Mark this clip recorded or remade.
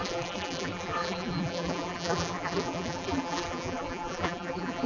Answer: remade